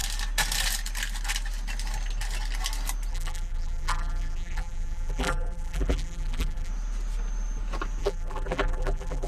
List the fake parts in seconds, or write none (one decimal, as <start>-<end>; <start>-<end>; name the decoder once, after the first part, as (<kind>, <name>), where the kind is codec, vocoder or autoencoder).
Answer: 3.1-6.7 (vocoder, BigVGAN v2); 8.0-9.3

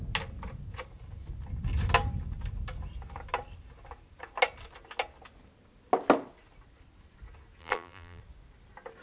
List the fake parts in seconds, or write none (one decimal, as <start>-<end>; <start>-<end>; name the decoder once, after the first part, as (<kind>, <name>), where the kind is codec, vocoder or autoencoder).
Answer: 7.6-8.2 (vocoder, BigVGAN v2)

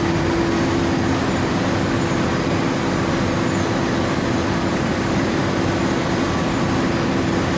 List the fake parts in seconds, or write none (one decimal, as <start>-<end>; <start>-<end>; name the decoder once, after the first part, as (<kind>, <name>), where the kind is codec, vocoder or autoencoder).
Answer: 4.7-5.4 (vocoder, BigVGAN v2)

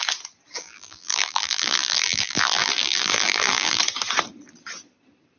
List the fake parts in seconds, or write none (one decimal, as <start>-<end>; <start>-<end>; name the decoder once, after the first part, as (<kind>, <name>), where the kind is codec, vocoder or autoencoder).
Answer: 0.6-3.8 (vocoder, BigVGAN v2)

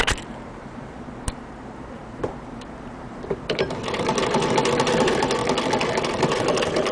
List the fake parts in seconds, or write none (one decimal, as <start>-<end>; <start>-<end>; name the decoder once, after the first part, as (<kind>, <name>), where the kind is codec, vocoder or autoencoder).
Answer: 0.0-5.4 (vocoder, BigVGAN v2); 6.0-6.9